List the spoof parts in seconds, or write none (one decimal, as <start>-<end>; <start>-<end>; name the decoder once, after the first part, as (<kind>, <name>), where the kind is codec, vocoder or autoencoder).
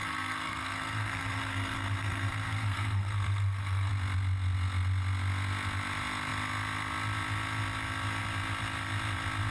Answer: 0.0-3.9 (codec, SNAC)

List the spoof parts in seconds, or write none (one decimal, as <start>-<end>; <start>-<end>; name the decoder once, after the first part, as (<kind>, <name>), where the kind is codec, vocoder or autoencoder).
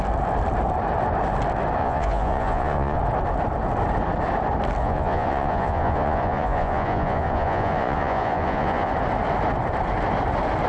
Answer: 1.8-3.0 (vocoder, Vocos); 4.8-8.9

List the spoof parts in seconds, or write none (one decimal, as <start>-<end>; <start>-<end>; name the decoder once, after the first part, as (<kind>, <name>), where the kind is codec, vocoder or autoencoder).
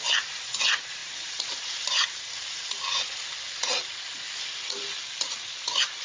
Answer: 1.0-2.7 (vocoder, BigVGAN v2)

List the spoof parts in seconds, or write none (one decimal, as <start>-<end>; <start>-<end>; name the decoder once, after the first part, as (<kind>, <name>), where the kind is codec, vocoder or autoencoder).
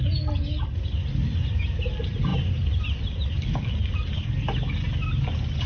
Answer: none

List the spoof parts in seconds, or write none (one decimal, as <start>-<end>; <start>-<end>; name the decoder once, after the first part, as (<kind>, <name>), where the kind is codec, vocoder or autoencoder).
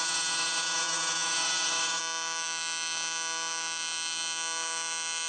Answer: 0.0-2.0 (vocoder, WaveNeXt)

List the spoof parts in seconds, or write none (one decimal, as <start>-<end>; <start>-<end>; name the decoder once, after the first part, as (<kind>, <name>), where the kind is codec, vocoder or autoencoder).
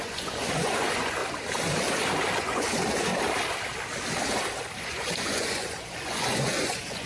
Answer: 0.0-1.2 (vocoder, Vocos); 2.4-3.1; 4.8-7.1